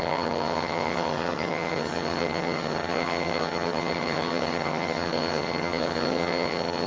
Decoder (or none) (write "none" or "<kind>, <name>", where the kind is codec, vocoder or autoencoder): vocoder, HiFi-GAN